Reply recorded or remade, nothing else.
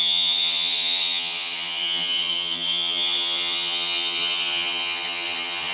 remade